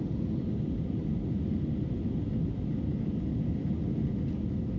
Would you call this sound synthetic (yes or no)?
no